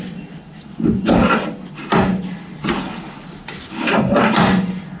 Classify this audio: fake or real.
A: real